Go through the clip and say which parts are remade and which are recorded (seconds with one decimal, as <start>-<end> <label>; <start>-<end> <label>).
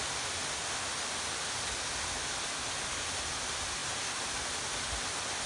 0.0-5.5 recorded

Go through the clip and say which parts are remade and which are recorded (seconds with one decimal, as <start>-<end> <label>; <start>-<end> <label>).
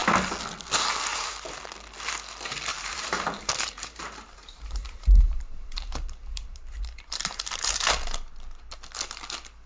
0.0-1.1 recorded; 1.1-1.6 remade; 1.6-2.7 recorded; 2.7-7.9 remade; 7.9-9.7 recorded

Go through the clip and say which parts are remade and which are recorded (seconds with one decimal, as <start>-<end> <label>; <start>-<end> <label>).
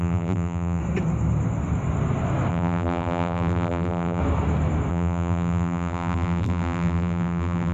0.0-0.8 remade; 0.8-2.5 recorded; 2.5-4.2 remade; 4.2-4.9 recorded; 4.9-7.7 remade